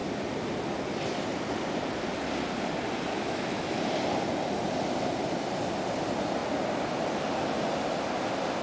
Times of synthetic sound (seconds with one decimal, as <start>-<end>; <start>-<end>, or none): 3.1-3.8

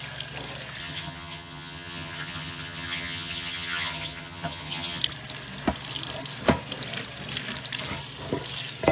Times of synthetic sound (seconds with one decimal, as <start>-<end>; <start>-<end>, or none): 0.8-5.0

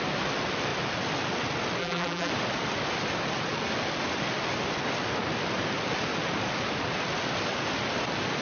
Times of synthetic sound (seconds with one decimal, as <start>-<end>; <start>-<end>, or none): 1.8-2.3

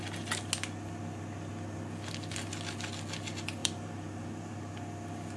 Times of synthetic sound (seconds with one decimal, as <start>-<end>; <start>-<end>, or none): 3.6-4.6

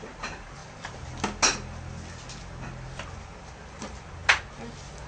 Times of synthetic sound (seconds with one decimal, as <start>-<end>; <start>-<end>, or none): 0.0-0.6; 3.7-4.2

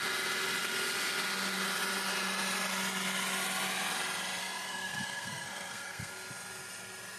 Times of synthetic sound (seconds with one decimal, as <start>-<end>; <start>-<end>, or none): 4.4-6.1